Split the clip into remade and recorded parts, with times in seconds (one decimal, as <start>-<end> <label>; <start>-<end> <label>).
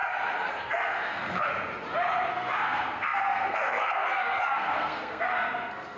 0.0-0.5 recorded; 0.5-1.5 remade; 1.5-2.3 recorded; 2.3-6.0 remade